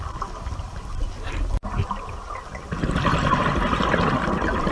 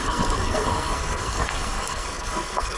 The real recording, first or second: first